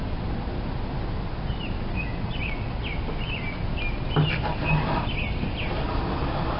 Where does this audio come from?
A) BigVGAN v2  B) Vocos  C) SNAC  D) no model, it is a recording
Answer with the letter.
D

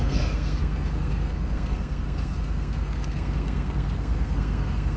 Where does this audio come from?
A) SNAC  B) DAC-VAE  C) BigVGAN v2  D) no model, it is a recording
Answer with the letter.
A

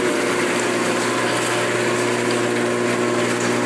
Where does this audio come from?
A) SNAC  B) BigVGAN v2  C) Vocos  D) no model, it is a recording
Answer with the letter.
D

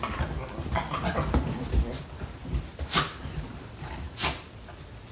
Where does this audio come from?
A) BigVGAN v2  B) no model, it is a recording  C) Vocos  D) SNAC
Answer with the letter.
B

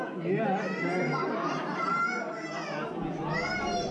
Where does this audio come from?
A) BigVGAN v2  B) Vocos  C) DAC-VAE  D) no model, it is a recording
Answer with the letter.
D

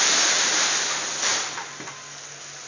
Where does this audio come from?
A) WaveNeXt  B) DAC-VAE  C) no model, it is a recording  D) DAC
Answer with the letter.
C